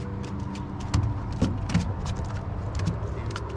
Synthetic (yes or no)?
no